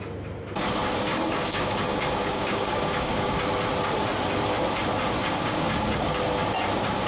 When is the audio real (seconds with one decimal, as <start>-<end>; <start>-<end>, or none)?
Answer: 0.0-1.1; 3.4-5.2; 5.7-7.1